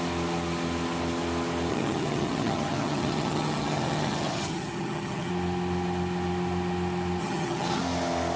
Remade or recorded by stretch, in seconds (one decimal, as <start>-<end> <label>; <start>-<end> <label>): 0.0-1.7 recorded; 1.7-5.3 remade; 5.3-7.2 recorded; 7.2-7.8 remade; 7.8-8.4 recorded

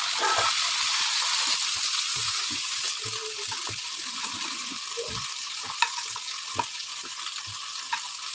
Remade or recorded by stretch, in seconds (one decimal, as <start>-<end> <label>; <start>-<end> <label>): 0.0-2.1 recorded; 2.1-2.8 remade; 2.8-8.3 recorded